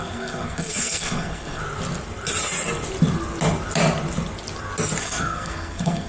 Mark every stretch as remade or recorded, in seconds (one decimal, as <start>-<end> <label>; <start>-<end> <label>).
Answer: 0.0-1.6 remade; 1.6-5.0 recorded; 5.0-6.1 remade